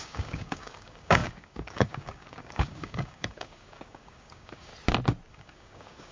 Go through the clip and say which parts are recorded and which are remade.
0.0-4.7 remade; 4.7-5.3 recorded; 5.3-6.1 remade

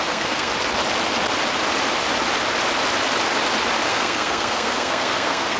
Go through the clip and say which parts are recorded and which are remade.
0.0-0.5 remade; 0.5-3.9 recorded; 3.9-5.6 remade

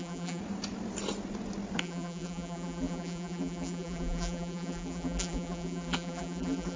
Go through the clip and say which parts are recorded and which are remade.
0.0-0.4 remade; 0.4-1.8 recorded; 1.8-6.8 remade